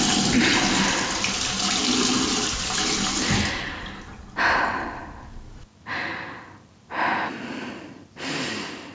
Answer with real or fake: real